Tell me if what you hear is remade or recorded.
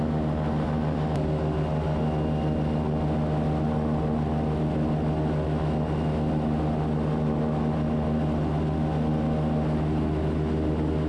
recorded